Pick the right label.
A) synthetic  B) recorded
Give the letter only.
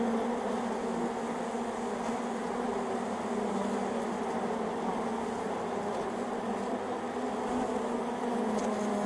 B